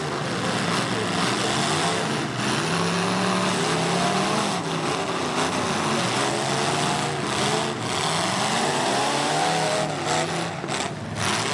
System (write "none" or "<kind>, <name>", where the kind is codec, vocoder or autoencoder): none